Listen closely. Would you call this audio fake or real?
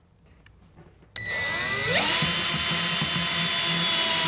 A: real